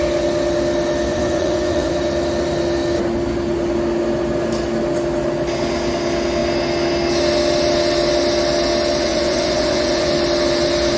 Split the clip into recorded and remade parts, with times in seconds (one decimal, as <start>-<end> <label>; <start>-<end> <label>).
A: 0.0-1.1 recorded; 1.1-1.9 remade; 1.9-9.1 recorded; 9.1-10.1 remade; 10.1-11.0 recorded